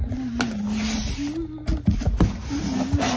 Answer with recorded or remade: recorded